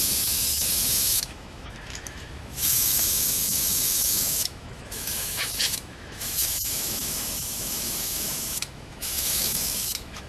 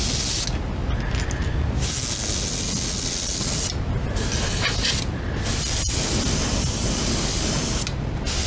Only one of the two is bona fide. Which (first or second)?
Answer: second